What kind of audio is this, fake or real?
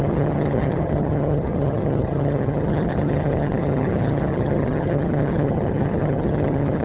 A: fake